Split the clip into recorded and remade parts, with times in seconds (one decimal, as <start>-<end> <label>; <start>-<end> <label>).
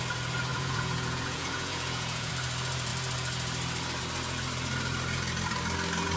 0.0-0.5 recorded; 0.5-2.3 remade; 2.3-6.2 recorded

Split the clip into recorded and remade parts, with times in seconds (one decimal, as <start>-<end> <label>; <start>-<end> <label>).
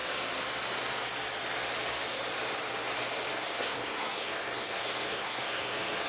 0.0-3.3 recorded; 3.3-6.1 remade